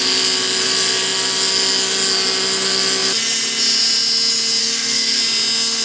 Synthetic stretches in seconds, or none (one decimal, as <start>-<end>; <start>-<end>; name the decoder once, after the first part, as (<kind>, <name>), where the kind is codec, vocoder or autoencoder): 4.6-5.2 (codec, SNAC)